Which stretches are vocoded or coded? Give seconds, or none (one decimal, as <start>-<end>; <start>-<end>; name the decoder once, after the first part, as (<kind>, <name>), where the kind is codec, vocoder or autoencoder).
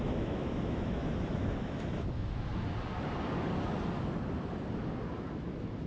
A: 0.0-2.5 (autoencoder, DAC-VAE); 5.3-5.9